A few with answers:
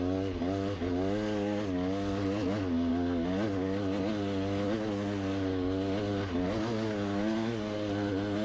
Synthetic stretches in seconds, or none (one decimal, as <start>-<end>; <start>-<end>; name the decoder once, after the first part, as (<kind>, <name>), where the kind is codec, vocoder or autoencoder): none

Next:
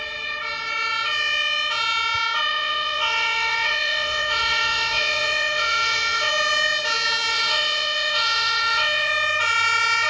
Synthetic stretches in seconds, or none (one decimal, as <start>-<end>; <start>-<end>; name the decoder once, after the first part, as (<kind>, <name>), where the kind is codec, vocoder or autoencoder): 2.5-6.3 (vocoder, WaveNeXt); 7.3-9.1

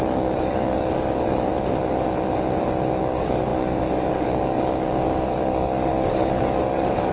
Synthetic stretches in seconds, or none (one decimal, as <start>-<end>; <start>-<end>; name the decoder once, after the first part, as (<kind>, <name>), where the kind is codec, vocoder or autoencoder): 0.0-1.5 (codec, DAC); 3.0-7.1